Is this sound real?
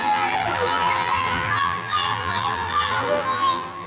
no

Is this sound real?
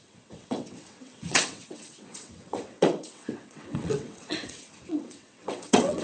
no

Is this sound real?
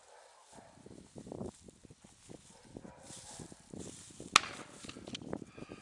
yes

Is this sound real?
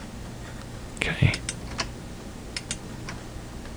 yes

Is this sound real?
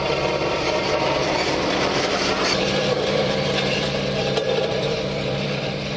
no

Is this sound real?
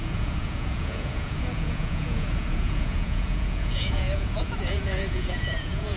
no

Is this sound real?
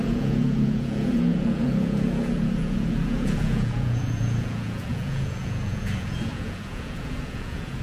no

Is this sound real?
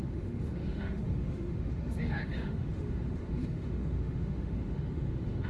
no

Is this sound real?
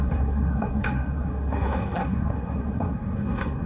no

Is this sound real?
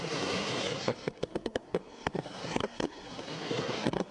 no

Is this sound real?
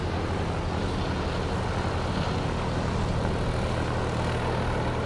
yes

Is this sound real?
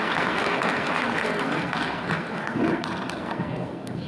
no